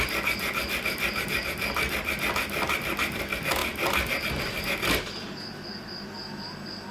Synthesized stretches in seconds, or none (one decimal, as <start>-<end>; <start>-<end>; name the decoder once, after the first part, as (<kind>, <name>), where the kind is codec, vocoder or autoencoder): none